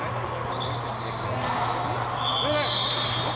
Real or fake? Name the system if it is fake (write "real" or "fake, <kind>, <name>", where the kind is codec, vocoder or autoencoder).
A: real